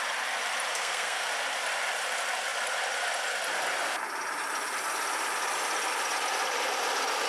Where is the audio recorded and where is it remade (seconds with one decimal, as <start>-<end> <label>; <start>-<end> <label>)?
0.0-0.7 recorded; 0.7-1.3 remade; 1.3-7.3 recorded